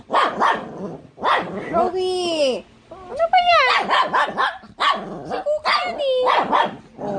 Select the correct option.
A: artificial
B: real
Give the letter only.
B